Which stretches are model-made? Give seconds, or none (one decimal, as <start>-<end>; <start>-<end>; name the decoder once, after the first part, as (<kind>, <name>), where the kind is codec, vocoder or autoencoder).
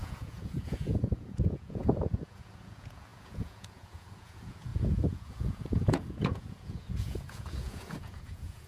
0.0-8.7 (vocoder, Vocos)